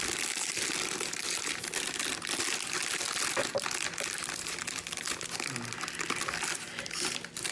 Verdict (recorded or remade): recorded